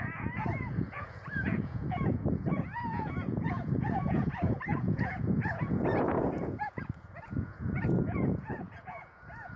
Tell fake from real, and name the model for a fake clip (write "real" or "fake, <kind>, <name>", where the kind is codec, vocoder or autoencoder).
fake, vocoder, Vocos